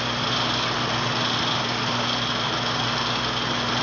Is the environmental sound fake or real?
real